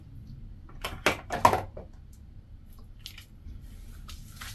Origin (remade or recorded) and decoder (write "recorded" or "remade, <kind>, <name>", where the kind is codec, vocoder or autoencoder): recorded